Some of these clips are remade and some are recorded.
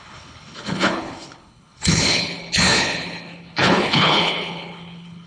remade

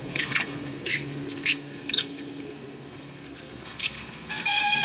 remade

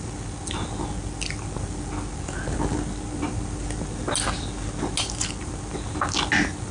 recorded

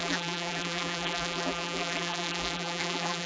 remade